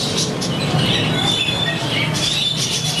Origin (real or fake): real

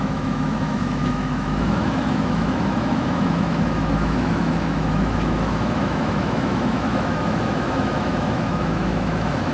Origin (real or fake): fake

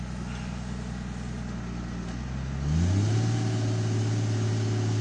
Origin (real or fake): real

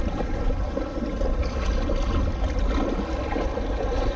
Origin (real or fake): real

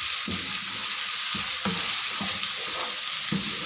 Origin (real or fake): real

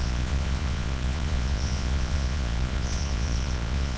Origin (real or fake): fake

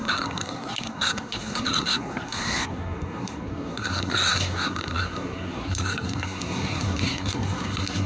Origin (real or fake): fake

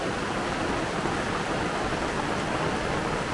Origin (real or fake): real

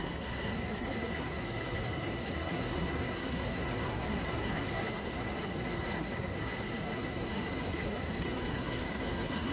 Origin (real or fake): fake